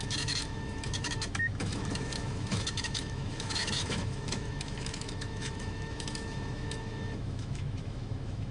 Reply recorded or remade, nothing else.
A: remade